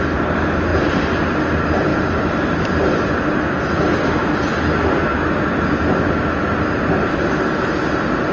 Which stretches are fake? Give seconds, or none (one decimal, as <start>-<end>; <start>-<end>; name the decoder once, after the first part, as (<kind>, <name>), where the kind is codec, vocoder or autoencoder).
0.7-1.4 (vocoder, BigVGAN v2); 1.9-3.1